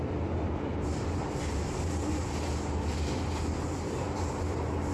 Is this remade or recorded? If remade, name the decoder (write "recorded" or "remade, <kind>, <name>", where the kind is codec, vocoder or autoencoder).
recorded